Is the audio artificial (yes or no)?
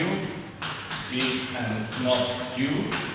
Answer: yes